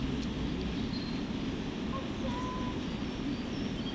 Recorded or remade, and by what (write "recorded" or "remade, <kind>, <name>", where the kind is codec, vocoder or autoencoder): recorded